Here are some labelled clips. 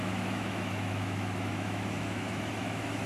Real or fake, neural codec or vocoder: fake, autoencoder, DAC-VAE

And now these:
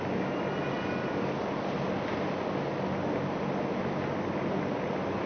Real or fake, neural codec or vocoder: real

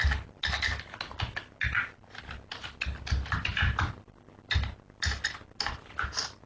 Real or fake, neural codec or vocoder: real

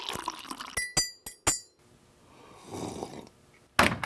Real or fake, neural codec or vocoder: real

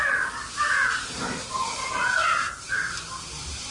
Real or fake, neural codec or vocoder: real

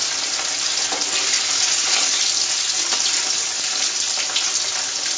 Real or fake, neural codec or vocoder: real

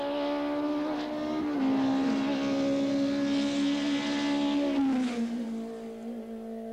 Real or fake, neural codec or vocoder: real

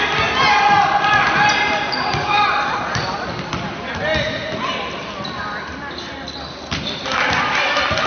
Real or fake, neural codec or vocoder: real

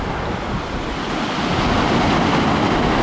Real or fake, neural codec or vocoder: real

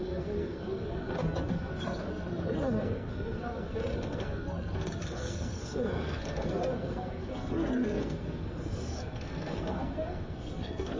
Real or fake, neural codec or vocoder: fake, codec, SNAC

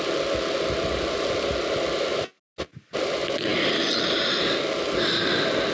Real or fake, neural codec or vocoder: real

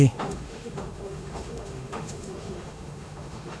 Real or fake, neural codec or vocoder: fake, autoencoder, DAC-VAE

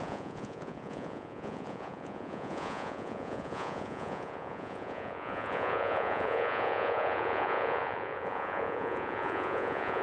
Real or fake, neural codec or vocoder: fake, vocoder, Vocos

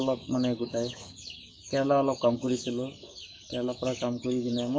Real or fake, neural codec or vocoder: fake, codec, DAC